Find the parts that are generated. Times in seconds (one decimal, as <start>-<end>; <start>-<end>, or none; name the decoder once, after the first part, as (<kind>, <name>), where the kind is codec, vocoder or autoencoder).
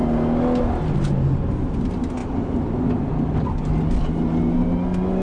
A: 2.2-4.0 (vocoder, BigVGAN v2)